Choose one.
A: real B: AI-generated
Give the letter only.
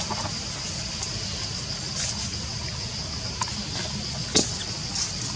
A